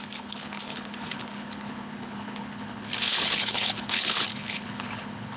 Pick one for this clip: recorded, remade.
remade